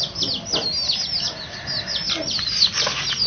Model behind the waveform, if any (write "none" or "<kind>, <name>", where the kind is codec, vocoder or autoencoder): none